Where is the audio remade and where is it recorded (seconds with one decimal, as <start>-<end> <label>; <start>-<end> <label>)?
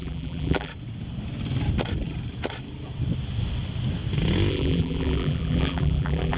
0.0-0.7 remade; 0.7-4.5 recorded; 4.5-6.4 remade